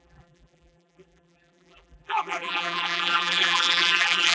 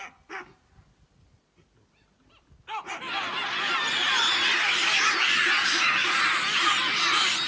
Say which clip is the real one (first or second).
second